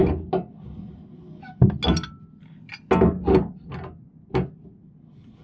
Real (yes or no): yes